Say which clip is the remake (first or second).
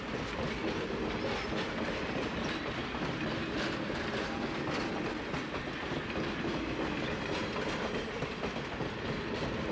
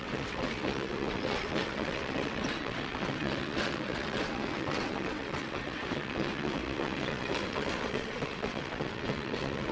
second